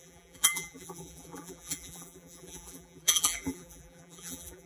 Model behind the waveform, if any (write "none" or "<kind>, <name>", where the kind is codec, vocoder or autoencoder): vocoder, BigVGAN v2